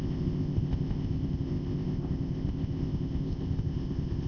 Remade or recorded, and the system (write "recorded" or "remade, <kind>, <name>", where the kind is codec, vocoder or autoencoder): remade, codec, ZipCodec